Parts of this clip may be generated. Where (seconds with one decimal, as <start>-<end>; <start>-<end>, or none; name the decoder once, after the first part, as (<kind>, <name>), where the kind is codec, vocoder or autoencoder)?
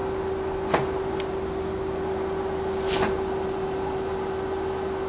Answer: none